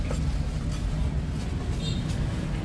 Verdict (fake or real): real